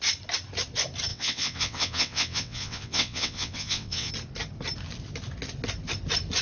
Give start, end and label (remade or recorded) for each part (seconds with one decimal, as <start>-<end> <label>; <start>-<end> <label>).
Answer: 0.0-1.1 recorded; 1.1-4.1 remade; 4.1-6.4 recorded